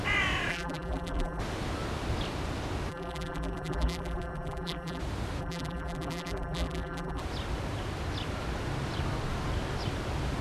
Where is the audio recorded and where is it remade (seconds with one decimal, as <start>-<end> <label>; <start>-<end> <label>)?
0.0-0.5 recorded; 0.5-1.4 remade; 1.4-2.9 recorded; 2.9-5.0 remade; 5.0-5.4 recorded; 5.4-7.2 remade; 7.2-10.4 recorded